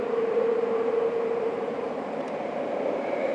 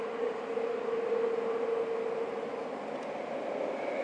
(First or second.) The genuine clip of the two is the second